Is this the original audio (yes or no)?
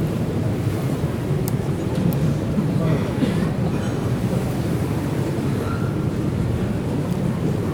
no